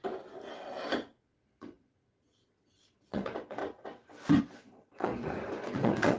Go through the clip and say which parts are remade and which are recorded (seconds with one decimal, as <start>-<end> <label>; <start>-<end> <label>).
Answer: 0.0-1.6 recorded; 1.6-3.6 remade; 3.6-4.4 recorded; 4.4-5.1 remade; 5.1-5.6 recorded; 5.6-6.2 remade